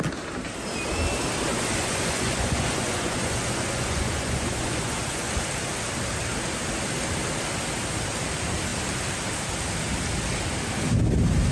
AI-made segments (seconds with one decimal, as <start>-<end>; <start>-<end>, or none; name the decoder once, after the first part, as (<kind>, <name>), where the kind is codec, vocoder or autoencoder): 1.5-5.3 (vocoder, Vocos)